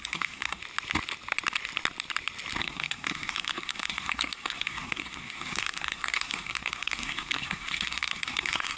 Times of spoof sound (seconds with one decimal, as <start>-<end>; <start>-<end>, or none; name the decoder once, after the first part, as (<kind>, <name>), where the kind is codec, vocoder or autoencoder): 0.0-0.6 (codec, SNAC); 2.6-8.8